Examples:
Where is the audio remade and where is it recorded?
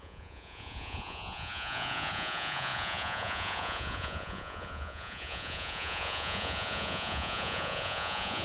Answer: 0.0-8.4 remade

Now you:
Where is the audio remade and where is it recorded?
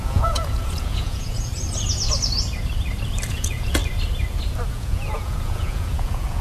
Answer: 0.0-1.5 remade; 1.5-3.3 recorded; 3.3-3.8 remade; 3.8-4.7 recorded; 4.7-6.4 remade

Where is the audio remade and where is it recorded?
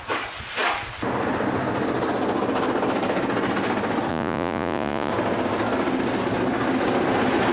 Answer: 0.0-4.1 recorded; 4.1-5.1 remade; 5.1-7.5 recorded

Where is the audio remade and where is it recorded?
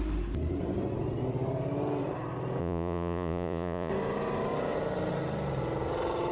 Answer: 0.0-2.6 recorded; 2.6-3.9 remade; 3.9-6.3 recorded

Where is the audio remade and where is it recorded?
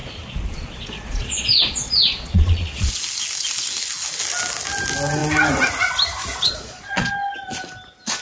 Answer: 0.0-2.9 remade; 2.9-6.2 recorded; 6.2-7.1 remade; 7.1-8.2 recorded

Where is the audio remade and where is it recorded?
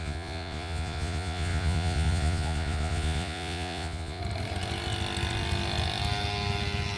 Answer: 0.0-4.2 remade; 4.2-7.0 recorded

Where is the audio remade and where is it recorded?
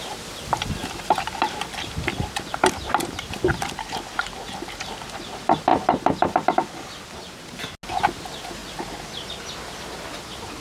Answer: 0.0-10.6 recorded